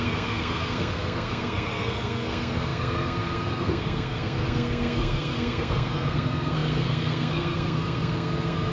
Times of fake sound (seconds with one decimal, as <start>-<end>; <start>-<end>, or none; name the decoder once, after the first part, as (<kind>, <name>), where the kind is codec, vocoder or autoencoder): 0.0-8.7 (codec, SNAC)